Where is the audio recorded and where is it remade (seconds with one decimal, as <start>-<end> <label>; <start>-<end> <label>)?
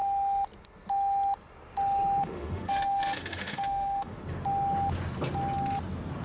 0.0-2.2 recorded; 2.2-4.2 remade; 4.2-6.2 recorded